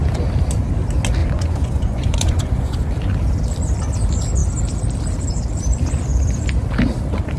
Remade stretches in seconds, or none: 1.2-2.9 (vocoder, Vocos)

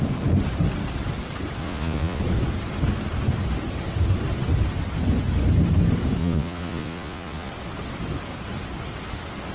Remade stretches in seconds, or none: 1.6-2.2 (vocoder, Vocos); 6.2-7.5

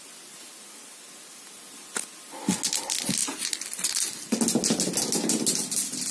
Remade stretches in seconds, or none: none

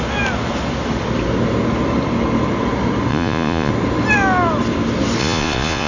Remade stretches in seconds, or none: 3.1-3.7 (vocoder, Vocos); 5.2-5.9

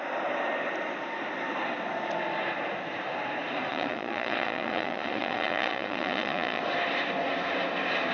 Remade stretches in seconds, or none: 3.7-6.6 (vocoder, Vocos)

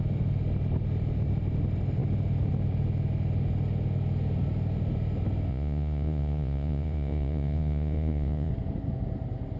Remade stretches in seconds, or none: 5.5-8.5 (vocoder, Vocos)